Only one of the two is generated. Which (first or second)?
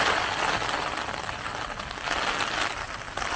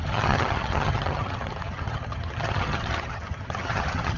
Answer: second